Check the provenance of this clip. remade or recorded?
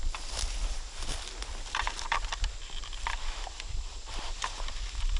recorded